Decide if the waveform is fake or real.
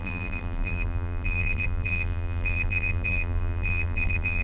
fake